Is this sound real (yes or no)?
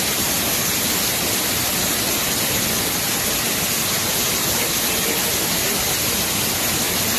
yes